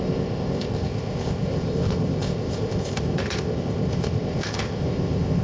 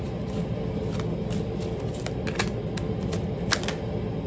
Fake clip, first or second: first